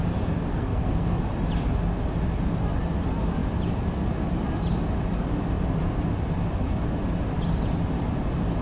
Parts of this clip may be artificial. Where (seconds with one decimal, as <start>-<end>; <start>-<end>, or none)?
0.5-1.2

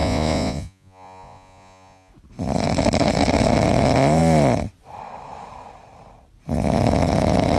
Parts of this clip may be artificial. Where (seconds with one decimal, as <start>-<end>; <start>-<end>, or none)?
0.0-2.1

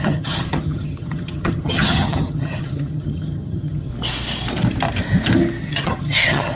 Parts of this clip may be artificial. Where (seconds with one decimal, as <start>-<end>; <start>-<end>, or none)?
0.0-3.9; 5.6-6.6

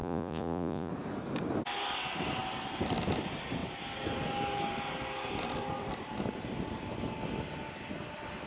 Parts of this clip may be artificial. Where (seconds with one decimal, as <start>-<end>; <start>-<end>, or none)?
0.0-0.9

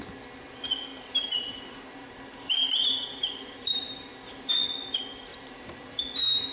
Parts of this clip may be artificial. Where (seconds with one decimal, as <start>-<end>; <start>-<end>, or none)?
0.9-4.5; 5.3-6.0